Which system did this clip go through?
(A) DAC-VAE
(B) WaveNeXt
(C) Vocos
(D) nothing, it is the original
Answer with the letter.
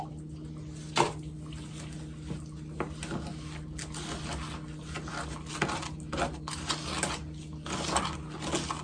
D